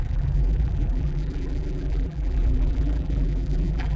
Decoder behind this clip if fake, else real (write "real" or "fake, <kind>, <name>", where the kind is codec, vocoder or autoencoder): fake, vocoder, BigVGAN v2